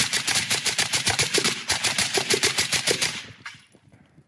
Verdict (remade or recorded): remade